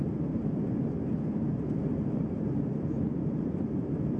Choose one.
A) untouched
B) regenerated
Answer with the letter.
B